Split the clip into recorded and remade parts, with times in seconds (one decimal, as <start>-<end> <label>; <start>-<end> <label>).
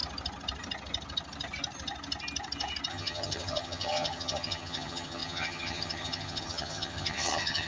0.0-2.9 recorded; 2.9-7.7 remade